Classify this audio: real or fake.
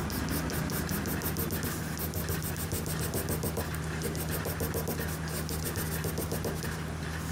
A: real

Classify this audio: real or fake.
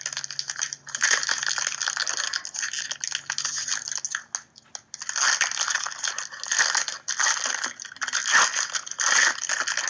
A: real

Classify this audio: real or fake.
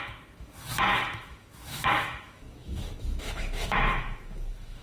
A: fake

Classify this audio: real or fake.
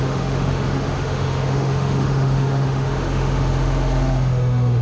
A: fake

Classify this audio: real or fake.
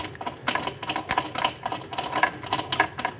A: real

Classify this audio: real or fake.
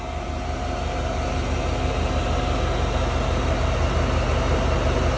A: real